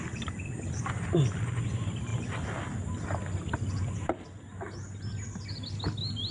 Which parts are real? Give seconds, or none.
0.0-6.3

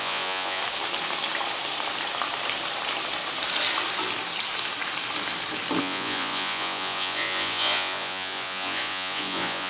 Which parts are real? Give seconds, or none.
0.6-5.8

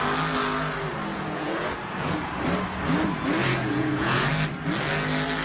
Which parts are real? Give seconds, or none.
0.0-1.1; 2.3-3.4; 4.3-5.4

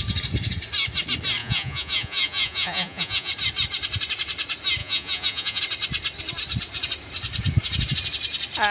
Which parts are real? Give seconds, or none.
0.0-1.4; 3.3-4.8; 5.6-8.7

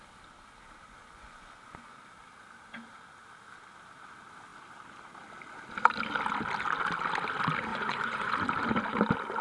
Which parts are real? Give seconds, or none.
0.0-1.0; 2.1-7.7; 8.3-9.4

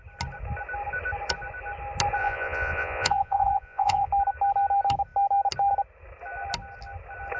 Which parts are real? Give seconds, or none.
0.0-2.2; 4.1-7.4